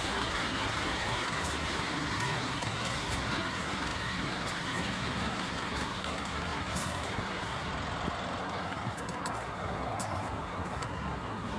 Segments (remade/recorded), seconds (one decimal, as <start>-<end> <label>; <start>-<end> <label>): 0.0-7.7 remade; 7.7-8.4 recorded; 8.4-11.6 remade